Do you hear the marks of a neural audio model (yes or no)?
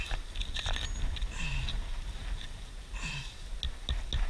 no